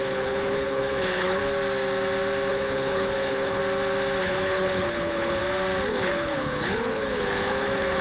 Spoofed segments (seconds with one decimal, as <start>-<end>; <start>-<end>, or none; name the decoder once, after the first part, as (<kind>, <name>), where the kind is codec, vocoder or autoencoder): 0.0-1.4 (codec, HILCodec); 2.5-3.6; 4.2-5.4; 5.9-8.0